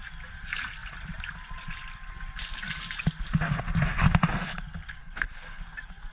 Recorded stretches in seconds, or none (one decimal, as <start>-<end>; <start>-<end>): 0.0-5.0; 5.6-6.1